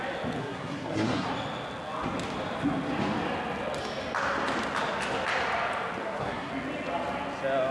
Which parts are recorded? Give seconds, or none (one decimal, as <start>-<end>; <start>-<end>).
0.0-0.4; 1.3-6.0; 6.5-7.7

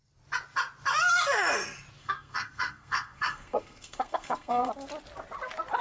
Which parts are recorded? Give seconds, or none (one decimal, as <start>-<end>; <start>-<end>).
0.0-2.0; 4.7-5.8